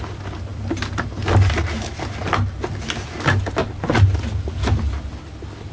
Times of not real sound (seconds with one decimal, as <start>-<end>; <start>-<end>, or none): none